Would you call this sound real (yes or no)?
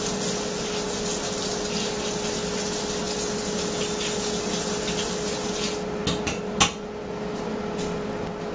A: yes